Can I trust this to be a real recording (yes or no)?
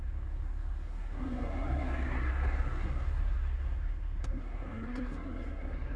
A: no